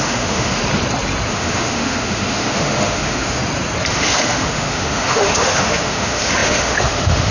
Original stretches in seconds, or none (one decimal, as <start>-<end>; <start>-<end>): 0.6-1.3; 3.4-3.9